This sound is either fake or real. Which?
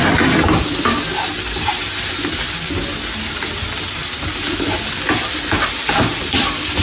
real